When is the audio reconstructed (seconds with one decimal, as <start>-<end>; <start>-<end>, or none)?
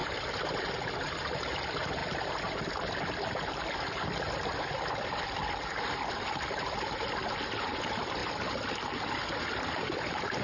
0.0-8.2